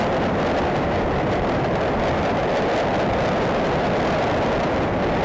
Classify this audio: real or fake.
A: fake